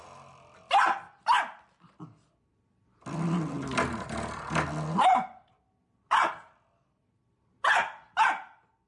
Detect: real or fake real